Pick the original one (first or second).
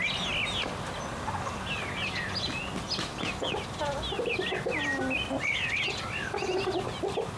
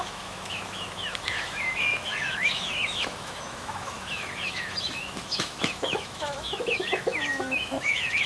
first